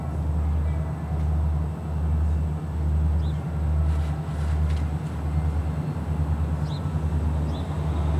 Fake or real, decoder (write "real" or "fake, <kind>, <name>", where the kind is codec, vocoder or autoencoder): real